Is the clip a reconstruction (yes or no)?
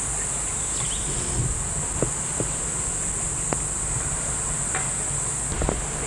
no